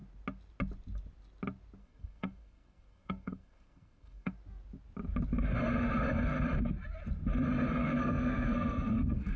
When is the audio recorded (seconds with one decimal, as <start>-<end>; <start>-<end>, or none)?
0.0-1.8; 4.3-7.8